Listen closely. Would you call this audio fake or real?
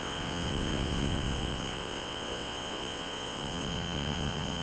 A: fake